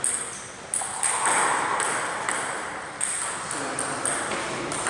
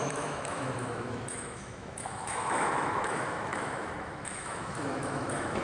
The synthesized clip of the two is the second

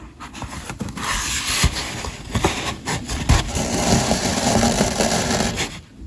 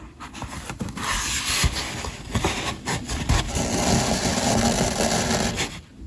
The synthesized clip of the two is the first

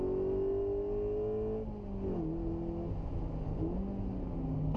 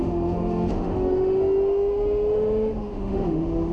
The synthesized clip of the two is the second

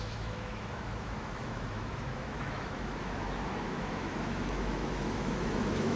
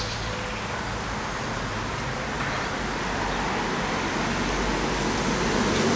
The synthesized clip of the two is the first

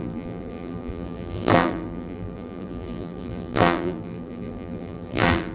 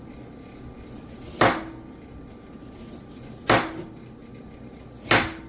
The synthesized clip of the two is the first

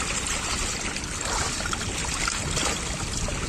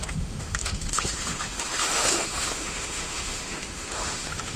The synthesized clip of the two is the second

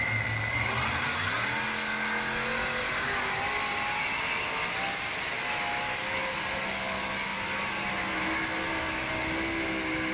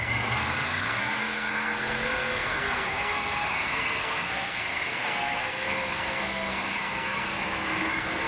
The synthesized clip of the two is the second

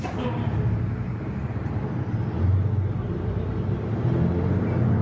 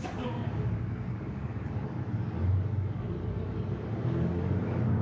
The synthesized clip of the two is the second